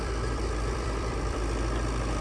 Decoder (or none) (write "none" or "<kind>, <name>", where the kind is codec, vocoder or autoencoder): vocoder, BigVGAN v2